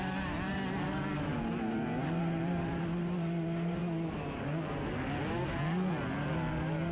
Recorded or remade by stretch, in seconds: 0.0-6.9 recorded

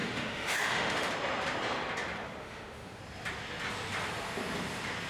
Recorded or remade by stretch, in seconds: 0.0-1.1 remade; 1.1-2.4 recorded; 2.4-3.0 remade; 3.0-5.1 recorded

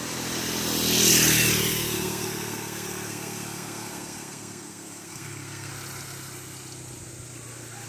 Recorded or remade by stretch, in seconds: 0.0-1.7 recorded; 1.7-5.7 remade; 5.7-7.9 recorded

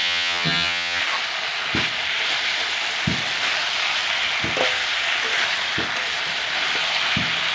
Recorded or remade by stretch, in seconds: 0.0-1.0 remade; 1.0-7.5 recorded

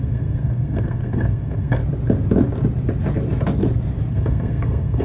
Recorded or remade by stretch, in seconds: 0.0-1.8 remade; 1.8-4.1 recorded; 4.1-5.0 remade